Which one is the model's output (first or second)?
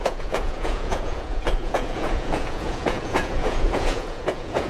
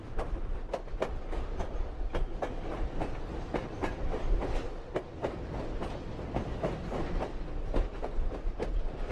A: first